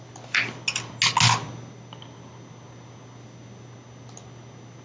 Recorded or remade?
recorded